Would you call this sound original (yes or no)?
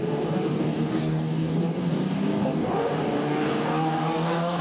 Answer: no